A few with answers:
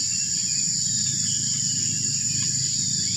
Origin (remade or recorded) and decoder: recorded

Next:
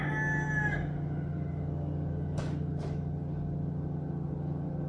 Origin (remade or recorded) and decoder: recorded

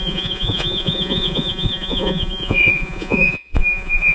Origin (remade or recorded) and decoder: remade, vocoder, Vocos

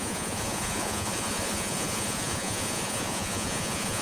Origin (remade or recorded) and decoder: remade, vocoder, Vocos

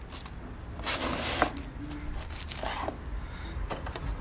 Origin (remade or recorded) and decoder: recorded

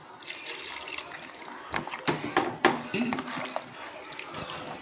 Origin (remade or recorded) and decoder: recorded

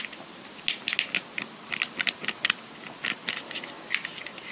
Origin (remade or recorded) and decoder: recorded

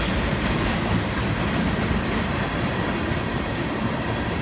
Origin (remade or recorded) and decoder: recorded